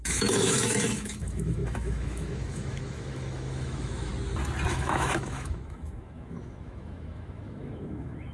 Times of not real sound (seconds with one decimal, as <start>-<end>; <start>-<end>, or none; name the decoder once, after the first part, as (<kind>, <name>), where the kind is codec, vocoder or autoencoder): 0.0-4.1 (autoencoder, DAC-VAE); 4.7-8.3